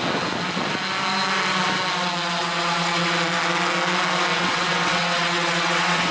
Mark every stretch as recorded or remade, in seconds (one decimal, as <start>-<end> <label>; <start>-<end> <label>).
0.0-2.4 recorded; 2.4-3.2 remade; 3.2-4.3 recorded; 4.3-6.1 remade

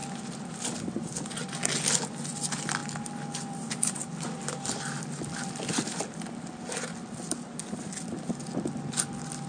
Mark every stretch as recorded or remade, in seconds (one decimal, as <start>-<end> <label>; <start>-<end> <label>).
0.0-9.5 recorded

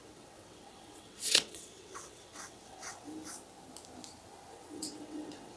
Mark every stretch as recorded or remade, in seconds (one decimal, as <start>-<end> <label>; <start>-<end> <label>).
0.0-3.1 remade; 3.1-4.5 recorded; 4.5-5.6 remade

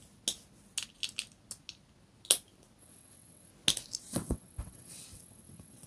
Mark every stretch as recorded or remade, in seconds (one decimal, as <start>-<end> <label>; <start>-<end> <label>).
0.0-2.8 recorded; 2.8-3.5 remade; 3.5-4.0 recorded; 4.0-5.9 remade

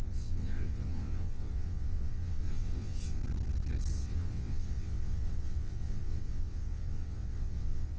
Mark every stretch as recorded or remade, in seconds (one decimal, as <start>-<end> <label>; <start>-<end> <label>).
0.0-3.2 remade; 3.2-3.9 recorded; 3.9-8.0 remade